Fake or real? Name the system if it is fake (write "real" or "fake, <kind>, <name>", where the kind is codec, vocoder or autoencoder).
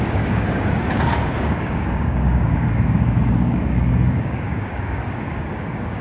fake, codec, DAC